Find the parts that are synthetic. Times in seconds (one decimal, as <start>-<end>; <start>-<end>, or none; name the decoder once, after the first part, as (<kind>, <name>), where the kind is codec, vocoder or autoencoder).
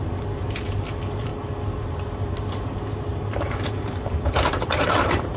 0.0-1.3 (vocoder, BigVGAN v2); 2.2-5.4